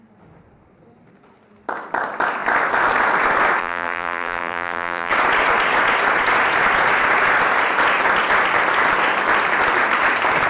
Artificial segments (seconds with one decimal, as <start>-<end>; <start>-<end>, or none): 3.6-5.1